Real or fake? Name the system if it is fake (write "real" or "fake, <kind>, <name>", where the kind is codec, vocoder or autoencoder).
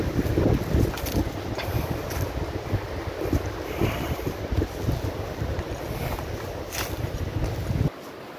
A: real